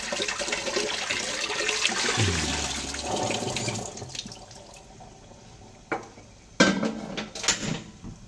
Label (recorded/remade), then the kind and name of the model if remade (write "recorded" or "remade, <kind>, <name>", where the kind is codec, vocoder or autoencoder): recorded